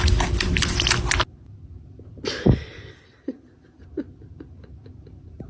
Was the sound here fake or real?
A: real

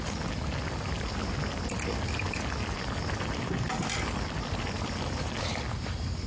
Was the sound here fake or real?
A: real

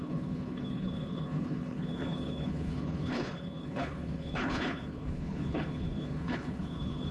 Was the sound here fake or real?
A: fake